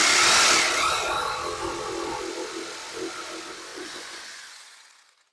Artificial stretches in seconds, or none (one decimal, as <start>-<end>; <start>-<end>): 3.7-5.3